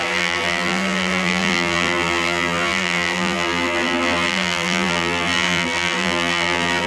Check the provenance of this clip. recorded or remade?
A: remade